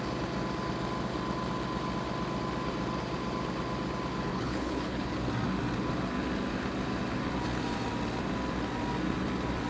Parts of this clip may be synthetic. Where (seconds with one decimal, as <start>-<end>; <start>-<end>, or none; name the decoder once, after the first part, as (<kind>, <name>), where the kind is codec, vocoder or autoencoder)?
4.3-5.1 (codec, HILCodec)